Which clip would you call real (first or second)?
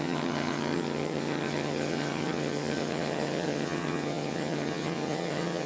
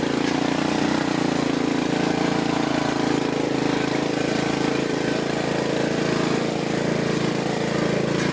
second